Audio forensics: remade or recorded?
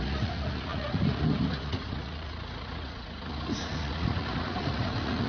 remade